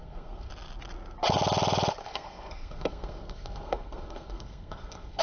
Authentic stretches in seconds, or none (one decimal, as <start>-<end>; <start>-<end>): 0.5-2.0